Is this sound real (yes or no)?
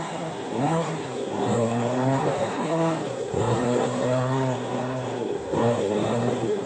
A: no